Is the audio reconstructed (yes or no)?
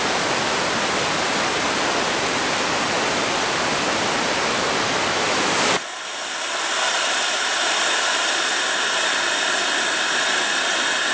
no